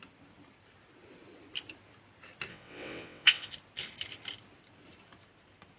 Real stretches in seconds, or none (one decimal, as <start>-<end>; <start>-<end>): 0.0-2.5; 3.5-5.8